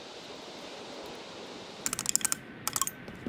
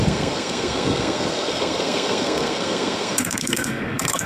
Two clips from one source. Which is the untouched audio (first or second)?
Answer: first